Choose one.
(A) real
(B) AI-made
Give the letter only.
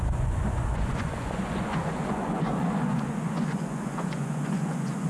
B